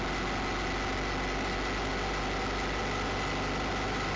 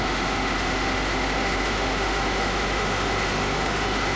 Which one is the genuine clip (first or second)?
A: first